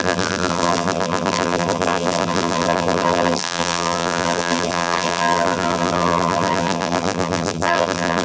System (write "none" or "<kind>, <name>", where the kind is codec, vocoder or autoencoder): vocoder, BigVGAN v2